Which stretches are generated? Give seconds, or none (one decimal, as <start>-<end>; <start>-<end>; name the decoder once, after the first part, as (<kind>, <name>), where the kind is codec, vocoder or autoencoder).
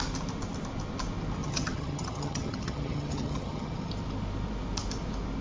1.4-3.9 (vocoder, HiFi-GAN)